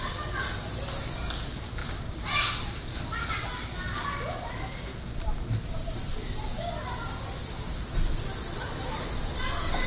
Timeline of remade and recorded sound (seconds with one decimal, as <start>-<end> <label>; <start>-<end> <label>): 0.0-9.9 recorded